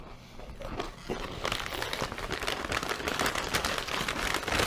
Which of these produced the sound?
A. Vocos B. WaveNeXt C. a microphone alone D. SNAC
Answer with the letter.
C